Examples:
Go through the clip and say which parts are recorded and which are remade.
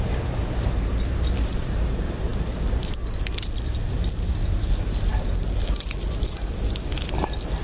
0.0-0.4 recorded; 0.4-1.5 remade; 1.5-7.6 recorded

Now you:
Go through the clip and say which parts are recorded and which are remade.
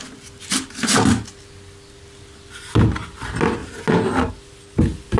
0.0-5.2 recorded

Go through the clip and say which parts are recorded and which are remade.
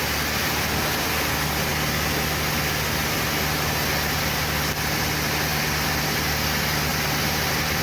0.0-6.9 recorded; 6.9-7.8 remade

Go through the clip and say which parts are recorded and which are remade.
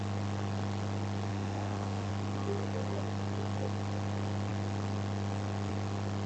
0.0-1.3 recorded; 1.3-2.1 remade; 2.1-6.3 recorded